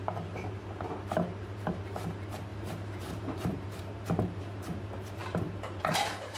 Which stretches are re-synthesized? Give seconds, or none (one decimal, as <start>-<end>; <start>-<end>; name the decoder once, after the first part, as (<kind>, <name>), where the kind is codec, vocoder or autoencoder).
0.0-6.4 (vocoder, BigVGAN v2)